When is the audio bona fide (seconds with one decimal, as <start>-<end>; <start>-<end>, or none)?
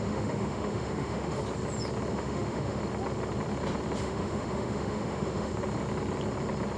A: 1.4-2.1; 2.8-4.0; 5.5-6.8